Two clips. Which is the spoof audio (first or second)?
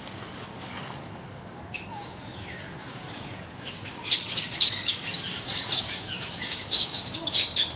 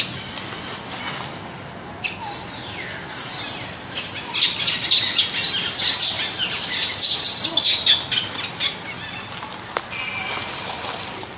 first